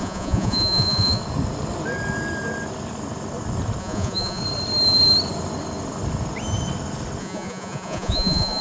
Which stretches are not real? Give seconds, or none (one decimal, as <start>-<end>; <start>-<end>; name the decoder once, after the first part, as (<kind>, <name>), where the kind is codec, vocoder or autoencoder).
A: 0.0-1.2 (vocoder, Vocos); 3.8-4.4; 7.2-8.6